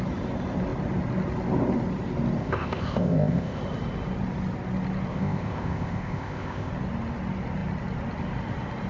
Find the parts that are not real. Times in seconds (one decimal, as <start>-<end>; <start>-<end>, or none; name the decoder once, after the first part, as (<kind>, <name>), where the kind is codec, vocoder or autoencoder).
2.4-3.6 (codec, ZipCodec); 5.1-6.7